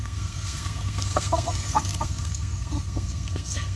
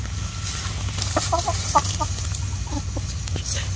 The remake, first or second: first